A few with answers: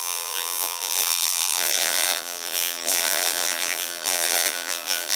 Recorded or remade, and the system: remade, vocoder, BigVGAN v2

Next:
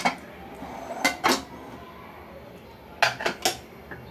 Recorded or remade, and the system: recorded